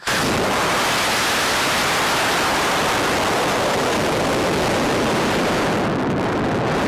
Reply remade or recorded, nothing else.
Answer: recorded